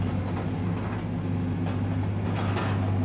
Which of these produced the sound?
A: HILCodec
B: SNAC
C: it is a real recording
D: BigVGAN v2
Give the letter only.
C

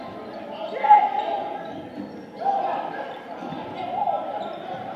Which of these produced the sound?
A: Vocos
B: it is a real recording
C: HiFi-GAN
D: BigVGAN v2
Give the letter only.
B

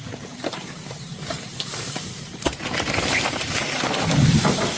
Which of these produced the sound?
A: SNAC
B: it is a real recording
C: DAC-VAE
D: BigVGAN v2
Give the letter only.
D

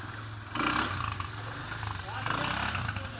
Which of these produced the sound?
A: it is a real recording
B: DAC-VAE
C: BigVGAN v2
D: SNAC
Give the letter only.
A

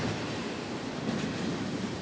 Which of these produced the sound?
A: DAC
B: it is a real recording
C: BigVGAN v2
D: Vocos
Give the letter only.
C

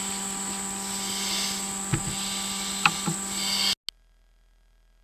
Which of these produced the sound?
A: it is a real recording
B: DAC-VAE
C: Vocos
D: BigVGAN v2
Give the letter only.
A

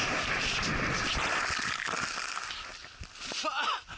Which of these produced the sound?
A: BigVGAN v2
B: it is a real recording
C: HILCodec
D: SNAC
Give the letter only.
B